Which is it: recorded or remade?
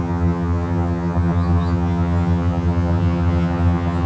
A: remade